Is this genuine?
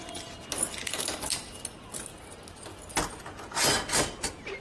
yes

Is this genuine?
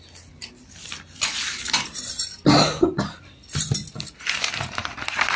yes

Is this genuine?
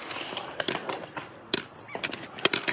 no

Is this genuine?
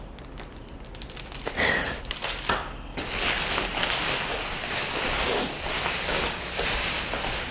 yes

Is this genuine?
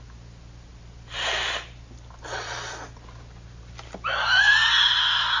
yes